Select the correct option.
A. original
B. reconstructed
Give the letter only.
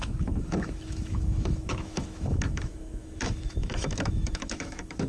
B